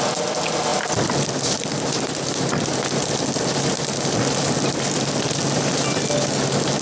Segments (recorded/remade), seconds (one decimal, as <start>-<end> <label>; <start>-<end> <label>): 0.0-6.8 recorded